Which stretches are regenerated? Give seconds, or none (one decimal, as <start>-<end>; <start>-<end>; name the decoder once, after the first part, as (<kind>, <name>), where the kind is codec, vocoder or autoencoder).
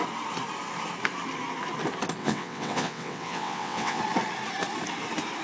2.2-4.0 (vocoder, WaveNeXt)